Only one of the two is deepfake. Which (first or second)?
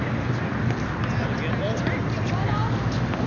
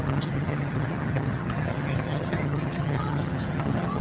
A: second